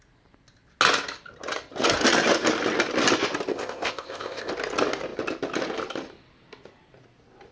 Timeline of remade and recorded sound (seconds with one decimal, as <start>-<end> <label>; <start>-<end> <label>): 0.0-3.5 recorded; 3.5-4.5 remade; 4.5-7.5 recorded